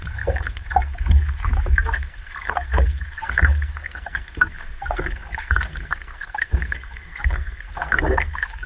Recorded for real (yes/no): no